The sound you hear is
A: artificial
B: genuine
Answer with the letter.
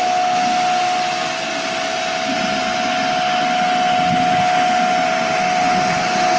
B